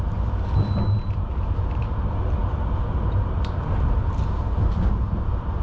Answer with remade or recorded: remade